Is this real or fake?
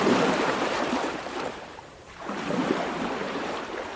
fake